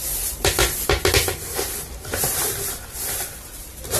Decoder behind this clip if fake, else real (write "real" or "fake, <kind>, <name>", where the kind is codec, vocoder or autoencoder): real